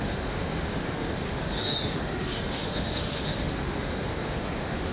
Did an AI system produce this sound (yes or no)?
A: yes